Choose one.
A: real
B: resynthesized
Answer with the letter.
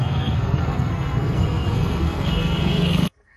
B